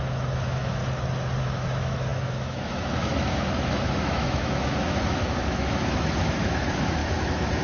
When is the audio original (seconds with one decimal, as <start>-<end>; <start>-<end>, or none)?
0.8-1.4

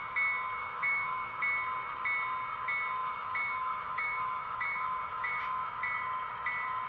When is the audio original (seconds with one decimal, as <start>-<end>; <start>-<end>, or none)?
0.0-0.6; 1.4-3.0; 5.8-6.9

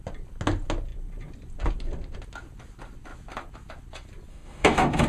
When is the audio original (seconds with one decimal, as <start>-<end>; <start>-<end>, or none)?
0.0-4.3

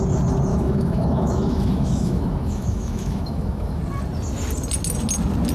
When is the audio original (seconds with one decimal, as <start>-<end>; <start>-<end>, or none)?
0.0-0.5; 3.8-5.5

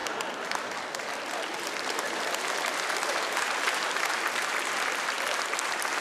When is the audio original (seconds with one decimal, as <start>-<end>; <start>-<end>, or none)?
0.0-6.0

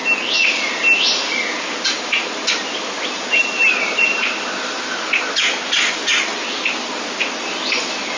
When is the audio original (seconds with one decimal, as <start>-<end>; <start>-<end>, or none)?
0.0-8.2

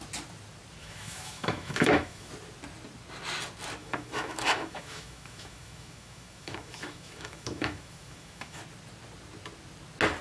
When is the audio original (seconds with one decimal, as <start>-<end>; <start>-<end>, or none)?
0.0-0.8; 2.3-3.8; 8.6-10.2